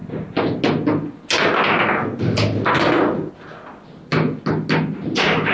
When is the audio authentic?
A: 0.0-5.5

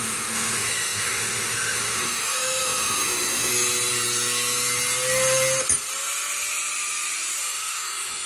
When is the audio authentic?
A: 3.5-7.4